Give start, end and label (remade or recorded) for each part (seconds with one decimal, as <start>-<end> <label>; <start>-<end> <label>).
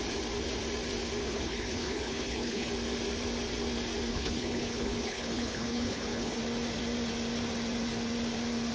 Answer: 0.0-1.2 recorded; 1.2-2.7 remade; 2.7-4.1 recorded; 4.1-6.4 remade; 6.4-8.7 recorded